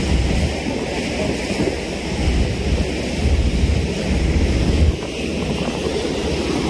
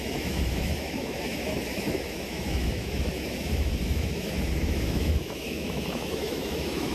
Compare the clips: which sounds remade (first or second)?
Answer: second